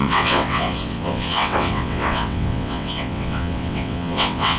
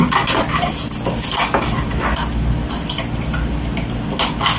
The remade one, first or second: first